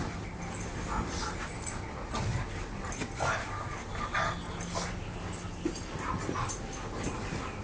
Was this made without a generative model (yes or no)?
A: yes